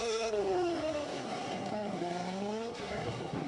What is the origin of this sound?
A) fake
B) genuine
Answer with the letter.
A